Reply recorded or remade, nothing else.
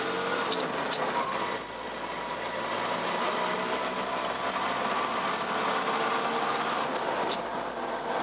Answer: recorded